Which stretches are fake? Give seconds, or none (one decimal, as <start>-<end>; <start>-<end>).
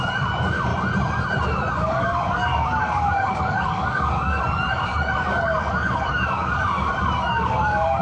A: 0.0-0.7; 1.7-8.0